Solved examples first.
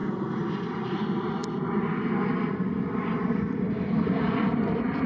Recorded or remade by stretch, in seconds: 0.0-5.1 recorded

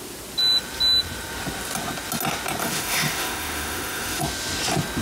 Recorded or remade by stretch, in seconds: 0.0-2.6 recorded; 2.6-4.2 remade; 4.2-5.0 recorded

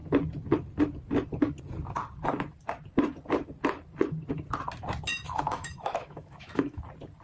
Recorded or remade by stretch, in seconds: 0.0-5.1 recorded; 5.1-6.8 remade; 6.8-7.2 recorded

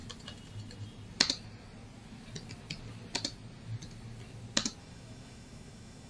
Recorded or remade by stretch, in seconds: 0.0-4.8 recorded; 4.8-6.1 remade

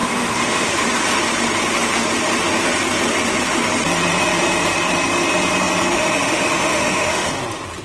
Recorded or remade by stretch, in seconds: 0.0-0.7 remade; 0.7-5.9 recorded; 5.9-7.3 remade; 7.3-7.8 recorded